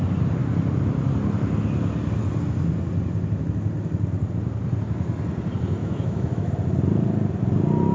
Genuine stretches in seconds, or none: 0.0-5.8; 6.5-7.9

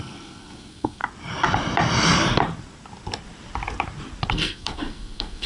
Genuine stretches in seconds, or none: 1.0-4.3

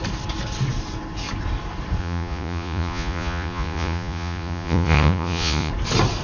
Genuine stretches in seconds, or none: 0.0-2.0; 5.7-6.2